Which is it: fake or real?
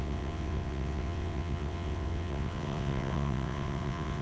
fake